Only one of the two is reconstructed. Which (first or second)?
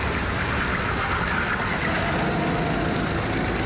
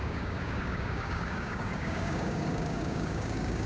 second